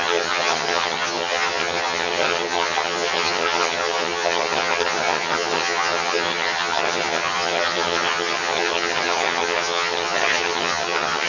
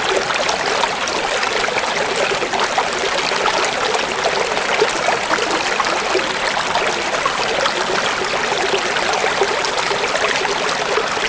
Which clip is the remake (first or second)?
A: first